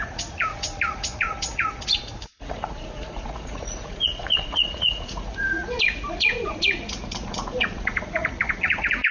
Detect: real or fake fake